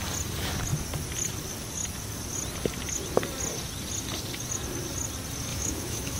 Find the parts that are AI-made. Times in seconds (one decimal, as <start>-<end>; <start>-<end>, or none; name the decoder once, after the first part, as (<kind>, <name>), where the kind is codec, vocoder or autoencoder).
5.5-6.2 (autoencoder, DAC-VAE)